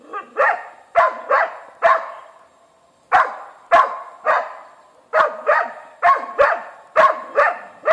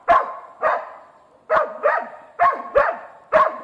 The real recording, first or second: first